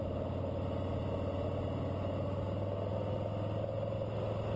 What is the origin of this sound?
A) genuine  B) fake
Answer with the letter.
A